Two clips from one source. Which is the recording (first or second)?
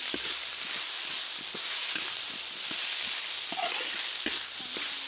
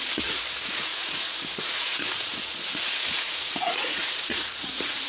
first